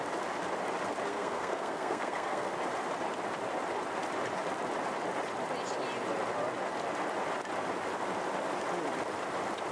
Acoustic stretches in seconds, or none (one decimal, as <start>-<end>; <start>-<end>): 0.0-1.1; 2.5-9.7